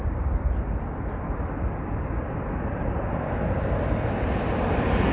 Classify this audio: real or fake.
real